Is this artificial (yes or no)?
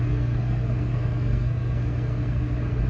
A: yes